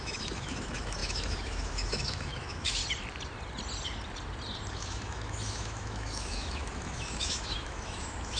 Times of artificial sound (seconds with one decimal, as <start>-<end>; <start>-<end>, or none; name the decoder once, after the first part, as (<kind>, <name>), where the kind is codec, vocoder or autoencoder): 0.0-2.8 (autoencoder, DAC-VAE); 4.7-8.4